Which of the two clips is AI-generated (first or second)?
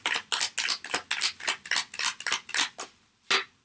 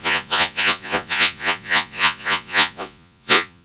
second